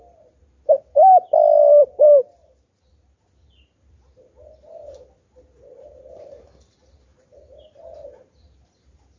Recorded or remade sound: recorded